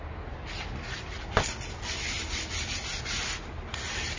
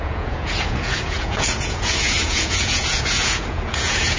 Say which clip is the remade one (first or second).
second